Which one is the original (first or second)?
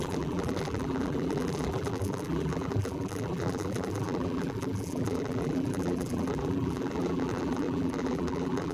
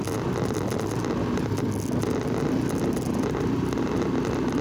second